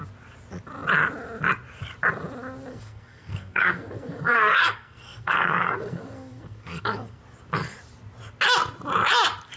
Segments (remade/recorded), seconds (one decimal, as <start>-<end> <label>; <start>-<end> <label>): 0.0-2.7 recorded; 2.7-7.2 remade; 7.2-9.6 recorded